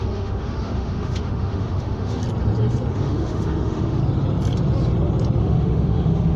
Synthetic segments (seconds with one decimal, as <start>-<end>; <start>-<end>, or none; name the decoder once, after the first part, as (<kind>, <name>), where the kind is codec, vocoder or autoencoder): 0.0-2.2 (autoencoder, DAC-VAE); 2.9-4.0; 5.4-6.4